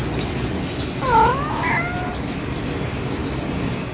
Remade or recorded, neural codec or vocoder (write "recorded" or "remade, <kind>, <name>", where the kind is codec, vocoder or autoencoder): recorded